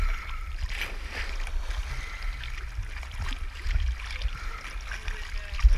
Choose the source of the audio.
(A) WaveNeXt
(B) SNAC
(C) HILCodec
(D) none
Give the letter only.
D